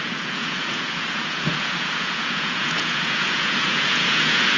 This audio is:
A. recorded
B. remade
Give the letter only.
B